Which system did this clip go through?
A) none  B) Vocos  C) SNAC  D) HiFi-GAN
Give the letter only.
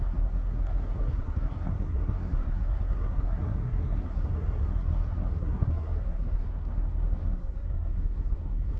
C